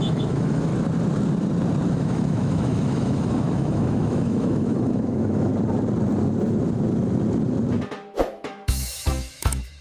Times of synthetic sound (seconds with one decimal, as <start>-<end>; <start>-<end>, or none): 0.0-0.7; 1.9-5.5; 8.3-9.8